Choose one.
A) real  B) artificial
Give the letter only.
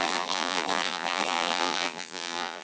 B